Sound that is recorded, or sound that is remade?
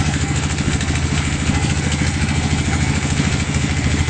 remade